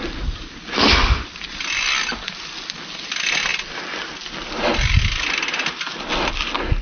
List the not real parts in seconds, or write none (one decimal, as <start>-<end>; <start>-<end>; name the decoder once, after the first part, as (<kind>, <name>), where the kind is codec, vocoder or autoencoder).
none